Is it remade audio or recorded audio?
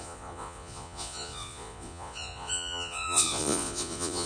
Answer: remade